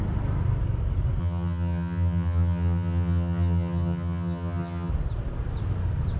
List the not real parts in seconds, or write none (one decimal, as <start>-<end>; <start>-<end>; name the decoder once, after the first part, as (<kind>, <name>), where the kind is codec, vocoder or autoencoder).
1.2-4.9 (vocoder, HiFi-GAN)